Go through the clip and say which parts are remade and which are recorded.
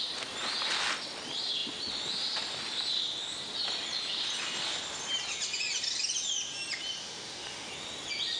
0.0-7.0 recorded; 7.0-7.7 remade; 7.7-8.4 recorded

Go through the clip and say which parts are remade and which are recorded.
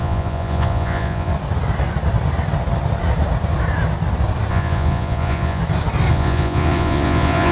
0.0-1.3 remade; 1.3-4.5 recorded; 4.5-5.6 remade; 5.6-6.1 recorded; 6.1-7.5 remade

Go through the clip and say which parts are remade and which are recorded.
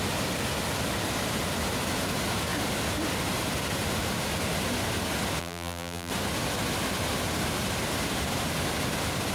0.0-5.4 recorded; 5.4-6.1 remade; 6.1-9.3 recorded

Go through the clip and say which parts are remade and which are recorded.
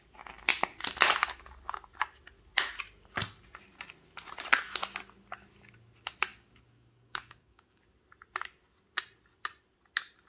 0.0-6.3 recorded; 6.3-7.8 remade; 7.8-10.3 recorded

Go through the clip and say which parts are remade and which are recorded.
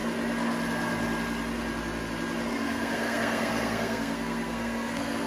0.0-2.5 recorded; 2.5-5.3 remade